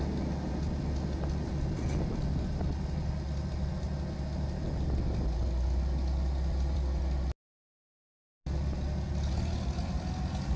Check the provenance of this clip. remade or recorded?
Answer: recorded